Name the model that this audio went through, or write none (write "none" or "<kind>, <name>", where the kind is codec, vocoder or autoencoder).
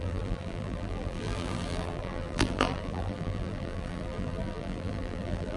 vocoder, BigVGAN v2